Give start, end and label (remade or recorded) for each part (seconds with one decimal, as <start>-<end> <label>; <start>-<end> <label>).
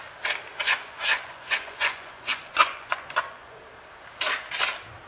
0.0-0.5 recorded; 0.5-3.6 remade; 3.6-5.1 recorded